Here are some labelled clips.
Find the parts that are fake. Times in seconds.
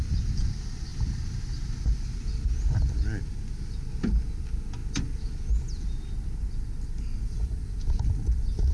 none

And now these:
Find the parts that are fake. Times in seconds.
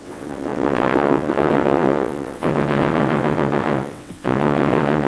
0.0-5.1